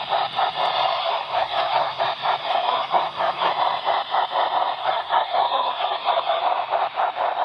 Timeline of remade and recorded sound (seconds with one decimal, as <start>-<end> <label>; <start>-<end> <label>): 0.0-1.0 recorded; 1.0-2.0 remade; 2.0-2.4 recorded; 2.4-3.5 remade; 3.5-4.8 recorded; 4.8-6.4 remade; 6.4-7.4 recorded